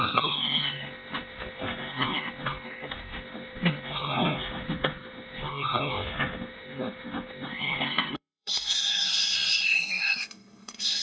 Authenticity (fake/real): fake